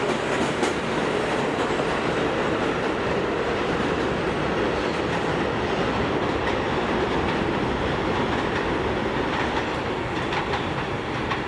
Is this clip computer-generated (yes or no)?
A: yes